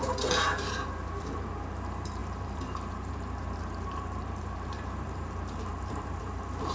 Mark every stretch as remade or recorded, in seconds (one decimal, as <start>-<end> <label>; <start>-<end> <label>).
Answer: 0.0-6.7 remade